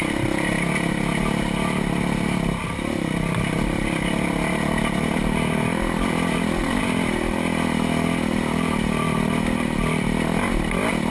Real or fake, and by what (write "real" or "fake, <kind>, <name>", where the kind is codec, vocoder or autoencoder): real